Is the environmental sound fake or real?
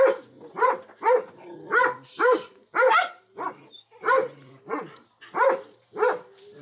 real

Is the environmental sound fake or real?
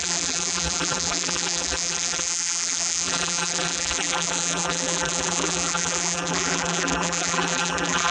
fake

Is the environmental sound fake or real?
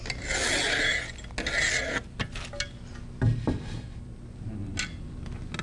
real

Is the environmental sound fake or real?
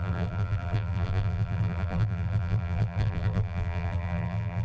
fake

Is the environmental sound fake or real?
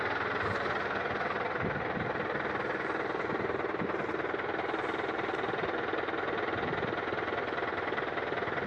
real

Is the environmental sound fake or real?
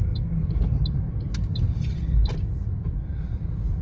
real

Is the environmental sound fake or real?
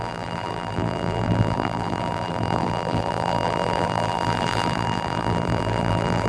fake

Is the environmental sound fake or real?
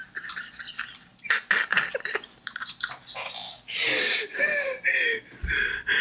real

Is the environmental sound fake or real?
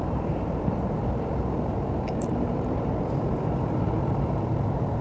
fake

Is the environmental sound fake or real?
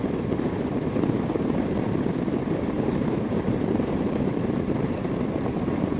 fake